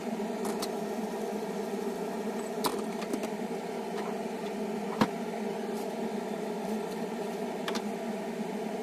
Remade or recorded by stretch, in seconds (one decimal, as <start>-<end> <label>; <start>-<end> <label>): 0.0-2.7 recorded; 2.7-3.4 remade; 3.4-8.8 recorded